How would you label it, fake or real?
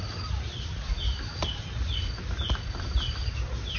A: real